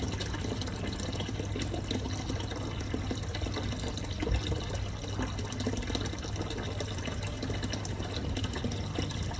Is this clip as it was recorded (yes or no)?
yes